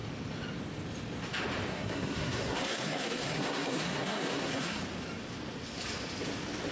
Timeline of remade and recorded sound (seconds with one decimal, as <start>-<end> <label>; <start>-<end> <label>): 0.0-1.7 recorded; 1.7-4.8 remade; 4.8-6.7 recorded